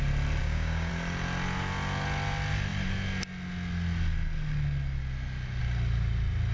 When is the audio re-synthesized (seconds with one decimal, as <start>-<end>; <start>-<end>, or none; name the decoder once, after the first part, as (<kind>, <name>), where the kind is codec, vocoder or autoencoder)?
0.4-0.9 (codec, DAC)